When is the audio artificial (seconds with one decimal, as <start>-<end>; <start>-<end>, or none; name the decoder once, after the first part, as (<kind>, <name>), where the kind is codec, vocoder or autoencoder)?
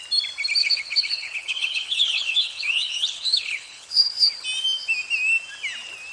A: 0.6-4.3 (codec, HILCodec)